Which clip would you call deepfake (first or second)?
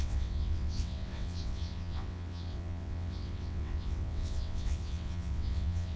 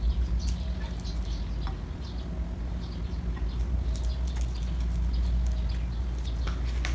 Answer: first